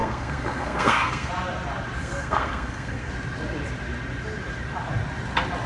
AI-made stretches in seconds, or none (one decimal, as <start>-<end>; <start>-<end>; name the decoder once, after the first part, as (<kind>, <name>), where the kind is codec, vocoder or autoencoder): 0.0-1.3 (codec, SNAC); 2.0-3.1